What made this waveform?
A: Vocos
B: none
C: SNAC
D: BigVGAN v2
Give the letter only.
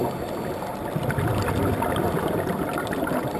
B